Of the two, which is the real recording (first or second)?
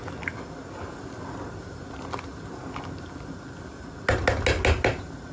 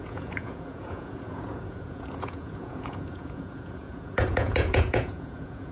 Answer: first